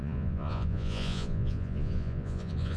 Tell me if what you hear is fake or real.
fake